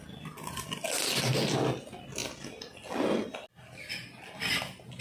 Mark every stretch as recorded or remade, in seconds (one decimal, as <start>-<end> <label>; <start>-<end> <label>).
0.0-5.0 recorded